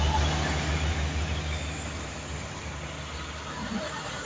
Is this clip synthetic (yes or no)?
no